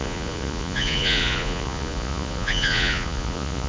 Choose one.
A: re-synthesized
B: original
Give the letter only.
A